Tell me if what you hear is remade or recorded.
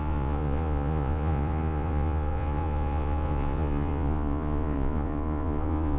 remade